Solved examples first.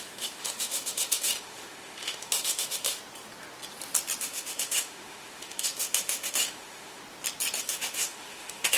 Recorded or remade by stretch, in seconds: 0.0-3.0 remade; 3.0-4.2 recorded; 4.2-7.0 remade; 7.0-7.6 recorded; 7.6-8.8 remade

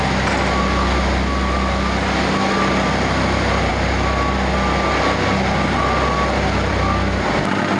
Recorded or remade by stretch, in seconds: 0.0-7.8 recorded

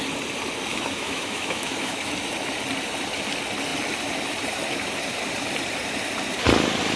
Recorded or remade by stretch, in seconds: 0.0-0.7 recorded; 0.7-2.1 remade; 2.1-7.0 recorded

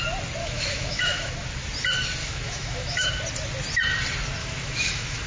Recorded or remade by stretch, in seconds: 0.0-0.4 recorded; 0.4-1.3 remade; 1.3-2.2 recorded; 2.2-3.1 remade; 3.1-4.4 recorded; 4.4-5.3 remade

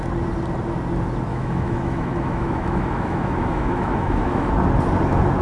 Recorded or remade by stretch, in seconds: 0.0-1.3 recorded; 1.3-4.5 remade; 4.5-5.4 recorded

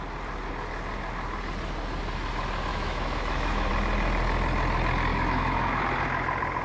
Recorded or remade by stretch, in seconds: 0.0-2.7 recorded; 2.7-3.7 remade; 3.7-5.1 recorded; 5.1-5.8 remade; 5.8-6.6 recorded

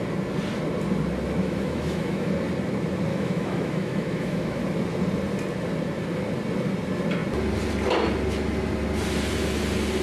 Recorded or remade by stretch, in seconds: 0.0-1.4 recorded; 1.4-2.3 remade; 2.3-3.1 recorded; 3.1-4.6 remade; 4.6-10.0 recorded

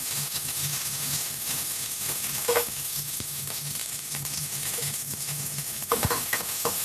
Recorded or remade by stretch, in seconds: 0.0-6.8 remade